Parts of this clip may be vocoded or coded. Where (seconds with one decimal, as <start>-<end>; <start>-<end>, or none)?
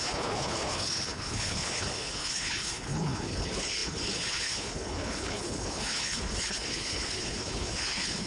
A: 0.0-8.3